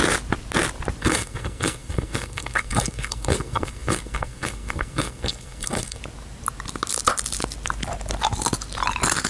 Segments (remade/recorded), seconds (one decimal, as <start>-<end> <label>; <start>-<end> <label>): 0.0-1.0 recorded; 1.0-6.0 remade; 6.0-9.3 recorded